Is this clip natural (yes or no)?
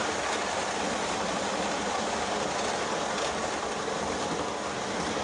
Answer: yes